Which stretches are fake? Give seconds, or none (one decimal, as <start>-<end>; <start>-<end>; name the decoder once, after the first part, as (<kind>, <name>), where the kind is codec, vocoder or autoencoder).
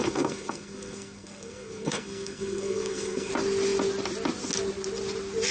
0.0-3.3 (codec, SNAC)